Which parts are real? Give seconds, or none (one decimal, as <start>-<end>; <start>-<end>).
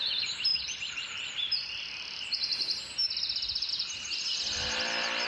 0.0-5.3